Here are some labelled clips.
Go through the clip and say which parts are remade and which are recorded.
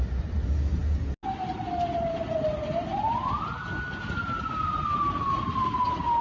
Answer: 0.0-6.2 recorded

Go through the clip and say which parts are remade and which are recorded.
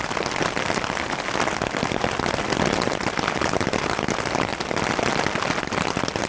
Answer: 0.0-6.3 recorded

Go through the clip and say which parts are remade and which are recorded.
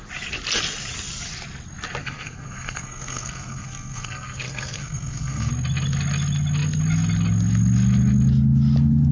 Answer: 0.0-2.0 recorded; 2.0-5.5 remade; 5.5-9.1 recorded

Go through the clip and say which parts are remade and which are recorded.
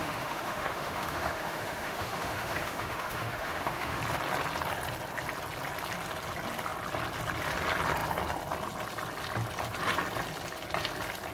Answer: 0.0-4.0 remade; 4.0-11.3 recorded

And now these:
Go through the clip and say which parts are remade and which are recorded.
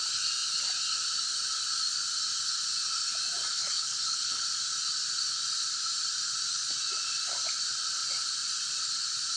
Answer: 0.0-3.5 recorded; 3.5-4.4 remade; 4.4-9.4 recorded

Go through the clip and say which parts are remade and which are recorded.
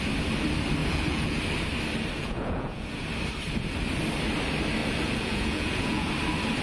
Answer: 0.0-0.8 recorded; 0.8-1.4 remade; 1.4-2.2 recorded; 2.2-3.0 remade; 3.0-4.8 recorded; 4.8-6.1 remade; 6.1-6.6 recorded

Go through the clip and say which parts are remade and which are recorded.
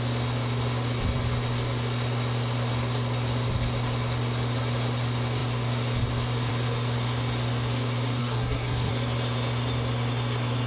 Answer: 0.0-8.2 recorded; 8.2-8.9 remade; 8.9-10.7 recorded